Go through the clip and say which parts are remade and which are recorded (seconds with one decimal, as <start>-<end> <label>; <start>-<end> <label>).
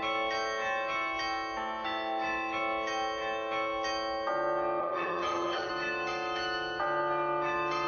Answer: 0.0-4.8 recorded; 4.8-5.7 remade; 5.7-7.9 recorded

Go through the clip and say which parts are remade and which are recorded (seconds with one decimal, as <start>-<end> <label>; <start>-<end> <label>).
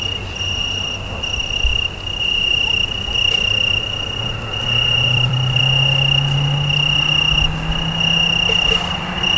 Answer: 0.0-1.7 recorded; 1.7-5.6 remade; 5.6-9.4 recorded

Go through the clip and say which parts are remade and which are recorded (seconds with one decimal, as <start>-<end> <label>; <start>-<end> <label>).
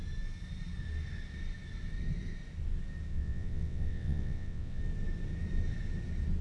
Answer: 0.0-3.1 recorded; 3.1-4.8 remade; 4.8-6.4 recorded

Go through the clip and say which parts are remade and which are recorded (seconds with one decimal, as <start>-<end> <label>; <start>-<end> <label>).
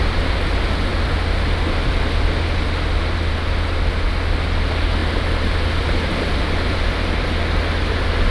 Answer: 0.0-8.3 recorded